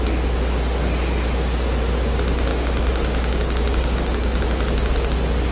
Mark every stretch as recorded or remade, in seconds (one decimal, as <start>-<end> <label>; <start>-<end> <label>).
0.0-2.5 recorded; 2.5-4.4 remade; 4.4-5.5 recorded

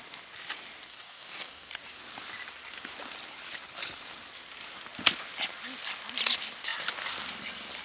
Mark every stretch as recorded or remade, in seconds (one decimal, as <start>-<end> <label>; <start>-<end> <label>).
0.0-0.9 recorded; 0.9-1.7 remade; 1.7-7.8 recorded

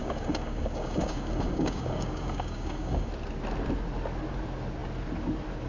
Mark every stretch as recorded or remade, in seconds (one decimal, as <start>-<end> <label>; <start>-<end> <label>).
0.0-3.1 remade; 3.1-5.7 recorded

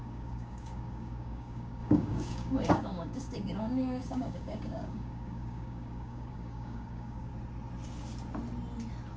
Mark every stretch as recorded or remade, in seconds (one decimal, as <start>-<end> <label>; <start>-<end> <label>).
0.0-7.3 remade; 7.3-9.2 recorded

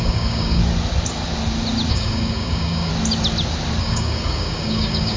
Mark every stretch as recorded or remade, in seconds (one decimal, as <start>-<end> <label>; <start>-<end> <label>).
0.0-0.6 remade; 0.6-1.9 recorded; 1.9-2.9 remade; 2.9-3.8 recorded; 3.8-5.2 remade

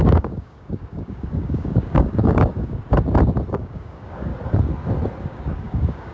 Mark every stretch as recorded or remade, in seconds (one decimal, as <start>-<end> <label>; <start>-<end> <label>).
0.0-2.8 remade; 2.8-3.5 recorded; 3.5-4.3 remade; 4.3-5.2 recorded; 5.2-6.1 remade